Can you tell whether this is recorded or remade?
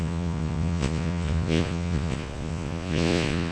remade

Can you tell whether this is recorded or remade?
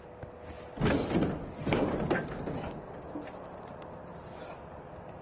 recorded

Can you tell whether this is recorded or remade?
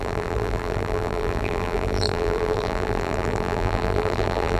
remade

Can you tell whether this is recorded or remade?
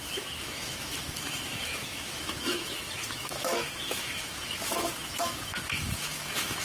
remade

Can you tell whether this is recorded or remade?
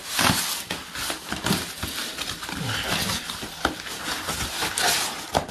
recorded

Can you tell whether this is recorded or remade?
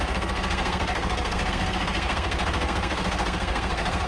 remade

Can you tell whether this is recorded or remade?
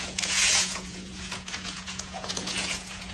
remade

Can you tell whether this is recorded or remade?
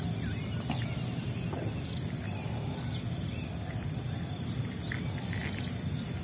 recorded